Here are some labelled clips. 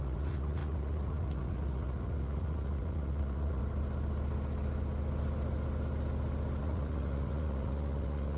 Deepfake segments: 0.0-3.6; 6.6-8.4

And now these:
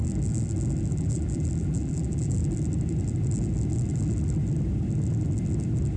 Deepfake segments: 0.9-2.4